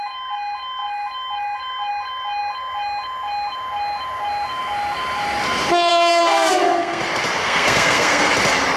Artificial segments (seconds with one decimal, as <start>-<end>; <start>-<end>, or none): 5.9-7.0; 7.4-8.3